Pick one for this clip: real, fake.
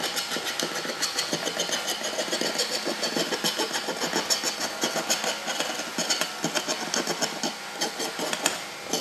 real